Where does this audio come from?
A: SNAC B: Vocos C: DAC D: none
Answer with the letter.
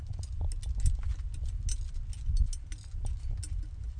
D